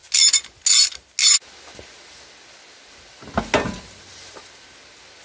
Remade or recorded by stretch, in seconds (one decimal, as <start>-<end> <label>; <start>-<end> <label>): 0.0-5.2 recorded